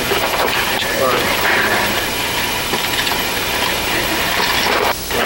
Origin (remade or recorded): remade